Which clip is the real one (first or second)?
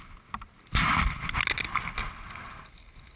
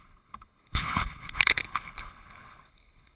first